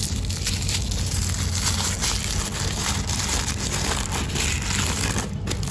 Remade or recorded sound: recorded